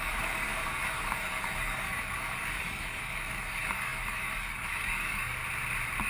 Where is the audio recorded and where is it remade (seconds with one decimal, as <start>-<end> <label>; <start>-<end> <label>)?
0.0-5.4 remade; 5.4-6.1 recorded